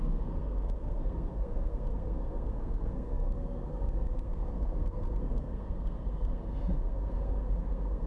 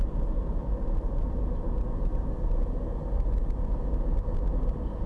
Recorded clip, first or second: second